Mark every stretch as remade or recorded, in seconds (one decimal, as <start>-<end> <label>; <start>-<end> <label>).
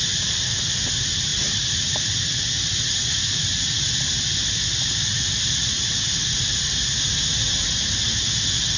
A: 0.0-8.8 recorded